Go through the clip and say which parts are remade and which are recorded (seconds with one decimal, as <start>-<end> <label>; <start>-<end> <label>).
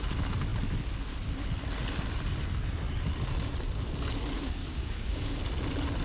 0.0-4.6 recorded; 4.6-5.4 remade; 5.4-6.0 recorded